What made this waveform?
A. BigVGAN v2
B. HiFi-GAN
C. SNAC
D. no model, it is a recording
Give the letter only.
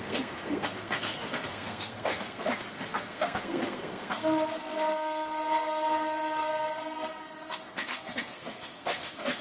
C